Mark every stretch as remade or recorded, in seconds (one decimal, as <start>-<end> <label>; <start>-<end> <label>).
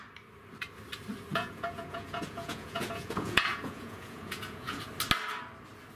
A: 0.0-1.3 recorded; 1.3-4.9 remade; 4.9-6.0 recorded